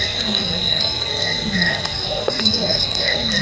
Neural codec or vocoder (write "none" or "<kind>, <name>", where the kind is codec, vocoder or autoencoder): codec, SNAC